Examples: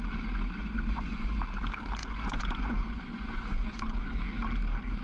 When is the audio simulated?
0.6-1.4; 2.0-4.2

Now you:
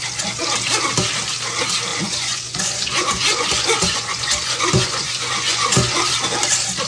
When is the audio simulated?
1.9-6.0

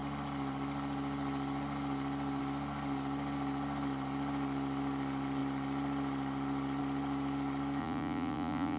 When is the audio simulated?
7.8-8.8

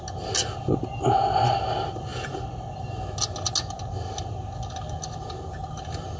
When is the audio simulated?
none

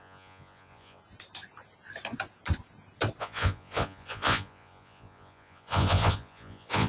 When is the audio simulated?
0.0-1.0; 3.2-6.9

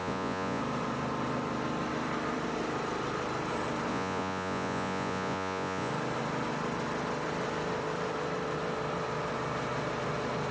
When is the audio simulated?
0.0-0.6; 3.9-5.9

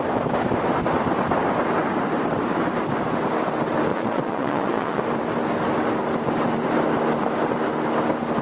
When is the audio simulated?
3.9-5.0